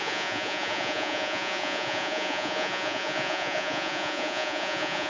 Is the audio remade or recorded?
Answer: remade